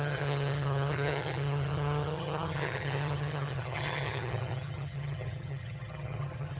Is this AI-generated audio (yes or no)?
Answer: yes